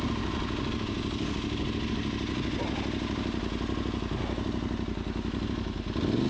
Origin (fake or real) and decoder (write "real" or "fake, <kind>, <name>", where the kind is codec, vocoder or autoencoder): real